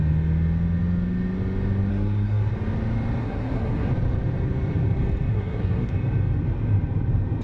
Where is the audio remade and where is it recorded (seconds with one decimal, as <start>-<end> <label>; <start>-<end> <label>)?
0.0-1.9 recorded; 1.9-2.5 remade; 2.5-3.2 recorded; 3.2-3.9 remade; 3.9-5.3 recorded; 5.3-5.9 remade; 5.9-7.4 recorded